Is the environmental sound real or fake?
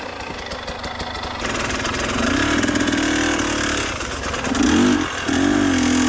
real